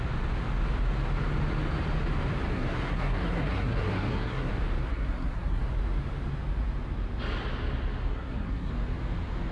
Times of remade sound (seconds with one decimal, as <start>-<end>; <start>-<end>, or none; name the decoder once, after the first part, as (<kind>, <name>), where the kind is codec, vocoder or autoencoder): 2.5-4.5 (codec, SNAC); 4.9-5.6; 8.1-8.7